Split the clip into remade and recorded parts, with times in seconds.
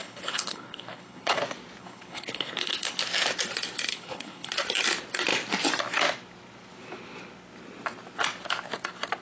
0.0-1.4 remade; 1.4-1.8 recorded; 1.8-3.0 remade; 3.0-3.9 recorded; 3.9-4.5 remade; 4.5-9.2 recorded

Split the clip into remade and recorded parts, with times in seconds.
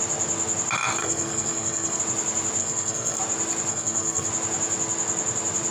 0.0-1.0 recorded; 1.0-2.0 remade; 2.0-2.6 recorded; 2.6-3.2 remade; 3.2-3.7 recorded; 3.7-4.3 remade; 4.3-5.7 recorded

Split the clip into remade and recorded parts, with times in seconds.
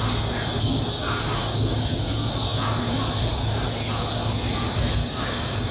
0.0-1.4 recorded; 1.4-2.0 remade; 2.0-5.0 recorded; 5.0-5.7 remade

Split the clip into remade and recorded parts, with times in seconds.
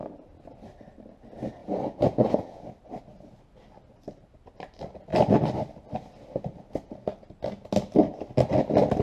0.0-1.6 recorded; 1.6-2.6 remade; 2.6-9.0 recorded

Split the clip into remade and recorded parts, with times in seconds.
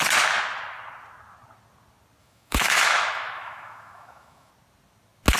0.0-2.2 recorded; 2.2-4.5 remade; 4.5-5.4 recorded